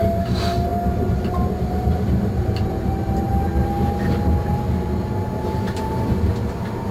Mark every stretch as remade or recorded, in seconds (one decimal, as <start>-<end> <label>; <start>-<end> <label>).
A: 0.0-6.9 recorded